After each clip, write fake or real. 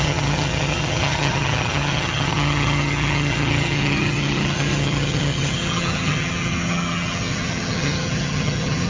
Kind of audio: fake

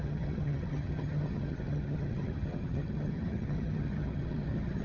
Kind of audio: fake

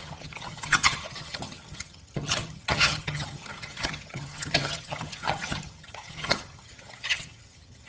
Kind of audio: fake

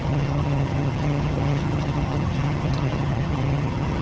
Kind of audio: fake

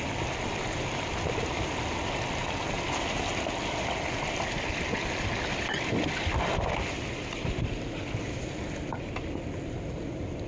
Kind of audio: real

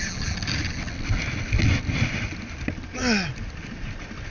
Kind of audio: real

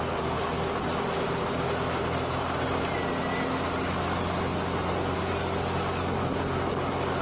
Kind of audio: real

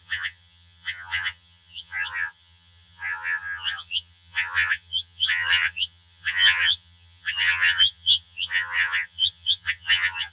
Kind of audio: fake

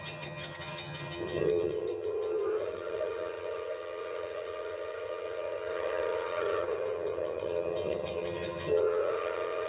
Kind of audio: fake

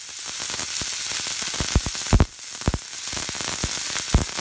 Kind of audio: real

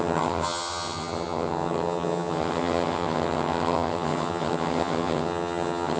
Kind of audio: fake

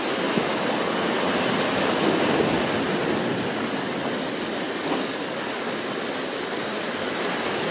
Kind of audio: real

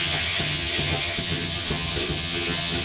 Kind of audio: fake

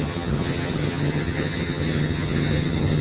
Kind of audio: fake